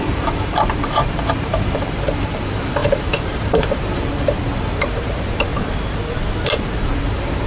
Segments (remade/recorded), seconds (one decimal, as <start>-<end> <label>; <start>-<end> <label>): 0.0-5.5 remade; 5.5-6.6 recorded; 6.6-7.5 remade